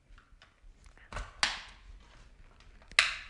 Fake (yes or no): no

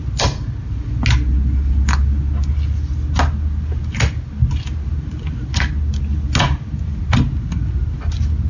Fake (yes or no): no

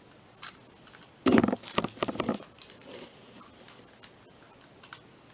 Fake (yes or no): no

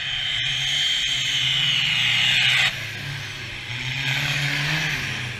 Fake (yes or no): no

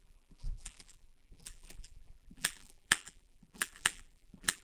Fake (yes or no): yes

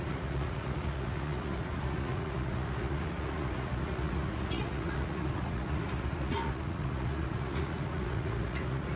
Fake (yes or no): yes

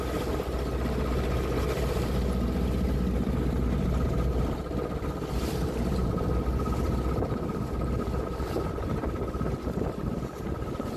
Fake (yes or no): no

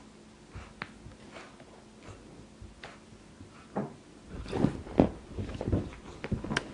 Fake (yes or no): no